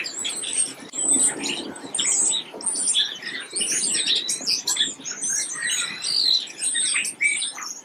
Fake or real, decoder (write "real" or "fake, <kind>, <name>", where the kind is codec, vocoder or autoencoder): real